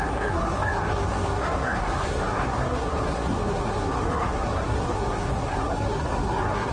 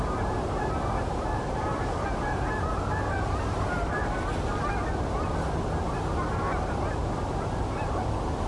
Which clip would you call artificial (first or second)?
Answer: first